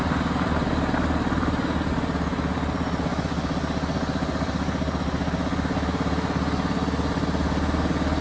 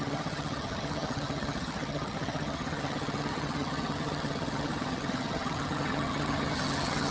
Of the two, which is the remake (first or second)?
second